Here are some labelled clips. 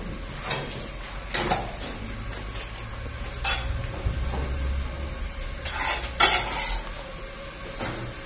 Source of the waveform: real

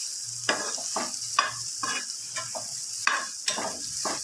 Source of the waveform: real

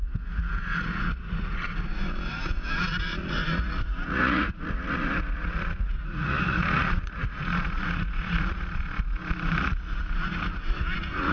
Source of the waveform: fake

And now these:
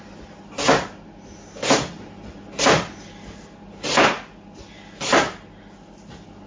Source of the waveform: real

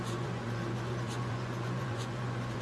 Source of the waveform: fake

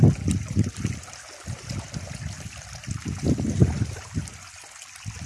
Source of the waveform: real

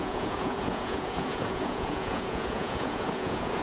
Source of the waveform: fake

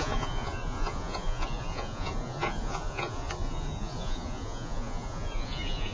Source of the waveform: fake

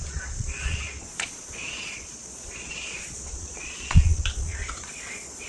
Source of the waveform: fake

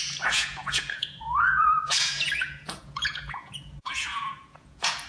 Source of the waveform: fake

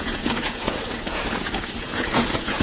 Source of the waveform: fake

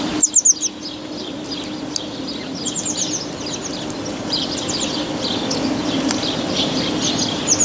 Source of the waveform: real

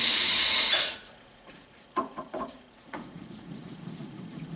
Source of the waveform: fake